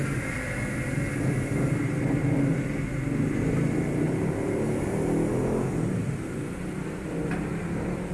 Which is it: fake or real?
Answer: real